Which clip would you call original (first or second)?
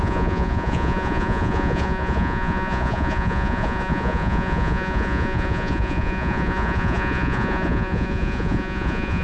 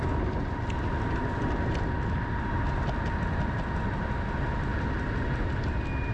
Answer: second